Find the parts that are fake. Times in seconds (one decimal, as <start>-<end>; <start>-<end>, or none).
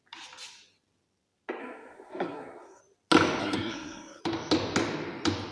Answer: 1.6-2.8; 3.4-4.2